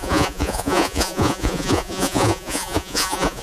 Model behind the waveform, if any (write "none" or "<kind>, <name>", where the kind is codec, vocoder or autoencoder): vocoder, Vocos